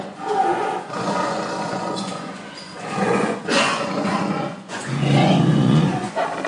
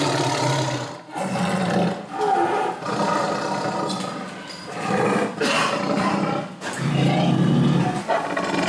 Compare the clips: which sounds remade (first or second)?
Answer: first